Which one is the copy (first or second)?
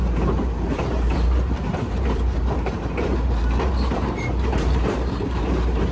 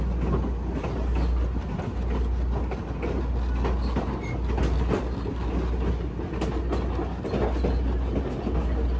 first